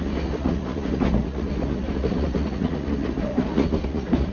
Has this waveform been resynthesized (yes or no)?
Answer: yes